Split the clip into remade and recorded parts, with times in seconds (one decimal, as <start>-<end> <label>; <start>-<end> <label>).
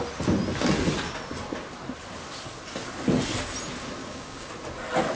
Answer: 0.0-4.0 recorded; 4.0-4.5 remade; 4.5-5.2 recorded